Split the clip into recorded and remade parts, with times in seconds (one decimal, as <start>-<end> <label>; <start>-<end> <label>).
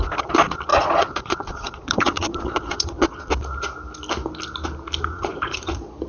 0.0-0.7 recorded; 0.7-3.3 remade; 3.3-5.1 recorded; 5.1-6.1 remade